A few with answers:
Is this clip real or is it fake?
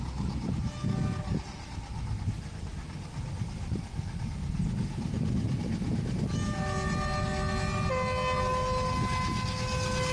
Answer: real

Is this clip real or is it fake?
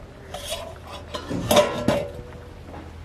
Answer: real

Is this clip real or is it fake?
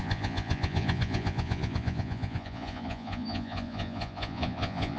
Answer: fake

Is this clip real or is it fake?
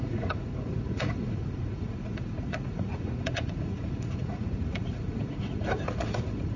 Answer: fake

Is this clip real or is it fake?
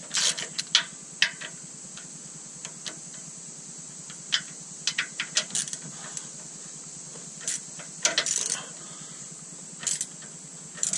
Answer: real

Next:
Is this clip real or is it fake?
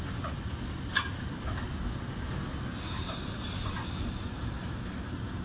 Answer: real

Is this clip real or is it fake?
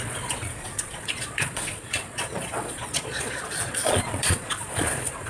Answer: fake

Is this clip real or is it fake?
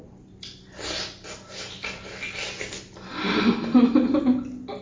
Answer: real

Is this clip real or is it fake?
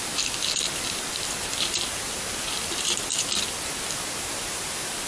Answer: real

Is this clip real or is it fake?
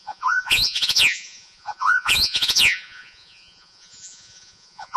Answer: fake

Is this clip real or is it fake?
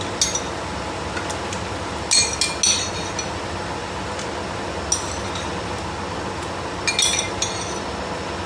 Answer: real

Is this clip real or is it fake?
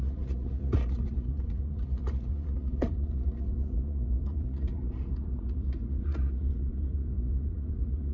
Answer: fake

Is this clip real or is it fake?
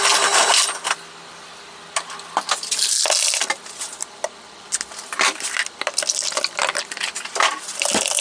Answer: real